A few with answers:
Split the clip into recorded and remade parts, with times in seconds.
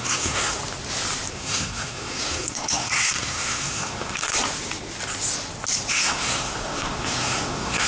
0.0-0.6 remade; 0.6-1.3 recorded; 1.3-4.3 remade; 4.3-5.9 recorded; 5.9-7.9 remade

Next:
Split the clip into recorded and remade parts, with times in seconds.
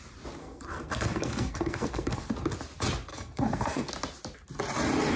0.0-0.4 recorded; 0.4-2.3 remade; 2.3-3.1 recorded; 3.1-3.9 remade; 3.9-5.2 recorded